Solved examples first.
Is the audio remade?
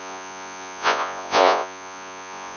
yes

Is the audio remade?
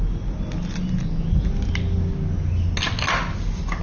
no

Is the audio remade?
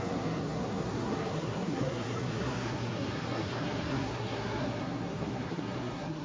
yes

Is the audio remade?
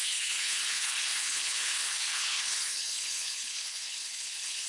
yes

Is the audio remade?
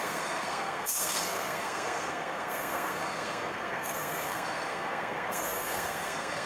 yes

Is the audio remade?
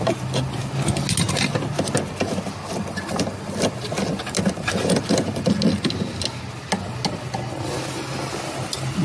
no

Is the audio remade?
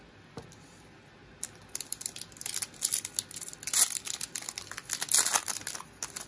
no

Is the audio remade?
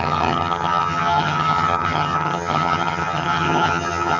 yes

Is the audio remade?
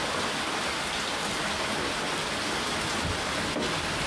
no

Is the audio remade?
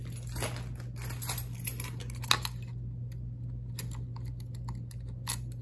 no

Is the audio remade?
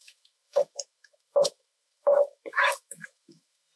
yes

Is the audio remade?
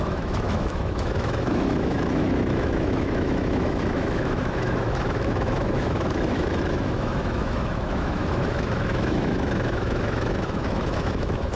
yes